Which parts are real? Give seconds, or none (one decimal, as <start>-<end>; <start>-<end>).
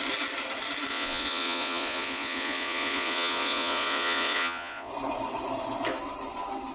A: 0.0-0.9; 4.9-6.7